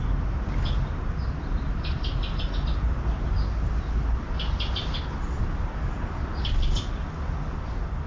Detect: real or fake real